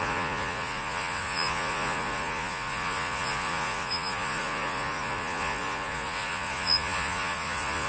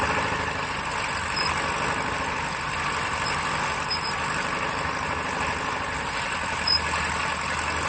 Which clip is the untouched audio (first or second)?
second